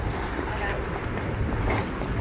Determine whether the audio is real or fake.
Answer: real